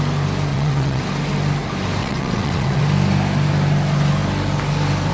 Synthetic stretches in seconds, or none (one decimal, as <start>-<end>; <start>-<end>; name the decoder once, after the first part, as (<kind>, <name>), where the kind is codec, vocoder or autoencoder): 0.5-1.0 (vocoder, WaveNeXt); 2.0-2.8